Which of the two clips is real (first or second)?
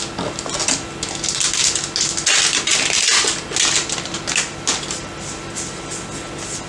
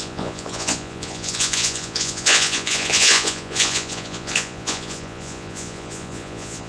first